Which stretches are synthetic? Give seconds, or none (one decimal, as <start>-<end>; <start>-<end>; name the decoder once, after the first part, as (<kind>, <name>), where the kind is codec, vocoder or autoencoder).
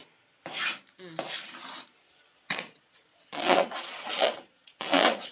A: 2.0-5.3 (vocoder, Vocos)